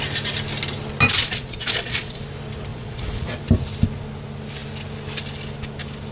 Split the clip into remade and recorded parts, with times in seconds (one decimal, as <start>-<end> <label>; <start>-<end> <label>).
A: 0.0-1.2 recorded; 1.2-2.2 remade; 2.2-2.7 recorded; 2.7-3.4 remade; 3.4-6.1 recorded

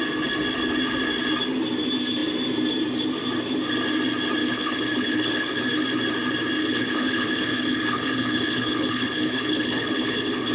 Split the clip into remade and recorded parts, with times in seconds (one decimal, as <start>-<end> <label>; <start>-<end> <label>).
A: 0.0-4.4 recorded; 4.4-5.6 remade; 5.6-6.6 recorded; 6.6-10.5 remade